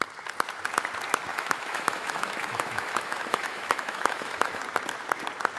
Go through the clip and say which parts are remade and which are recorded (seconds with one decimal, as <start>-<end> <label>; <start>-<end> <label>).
0.0-1.3 recorded; 1.3-4.6 remade; 4.6-5.6 recorded